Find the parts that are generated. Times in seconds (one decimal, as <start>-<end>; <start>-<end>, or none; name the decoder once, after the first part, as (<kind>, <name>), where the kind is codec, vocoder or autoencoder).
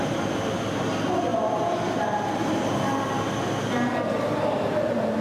none